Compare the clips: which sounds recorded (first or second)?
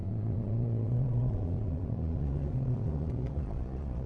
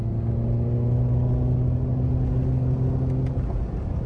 second